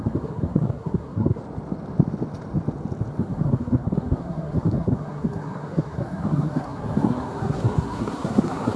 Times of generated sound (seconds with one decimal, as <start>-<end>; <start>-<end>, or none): 0.0-1.4; 3.2-8.8